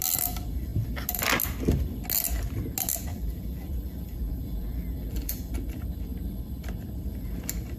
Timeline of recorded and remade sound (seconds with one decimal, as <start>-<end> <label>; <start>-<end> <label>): 0.0-3.1 recorded; 3.1-5.5 remade; 5.5-7.8 recorded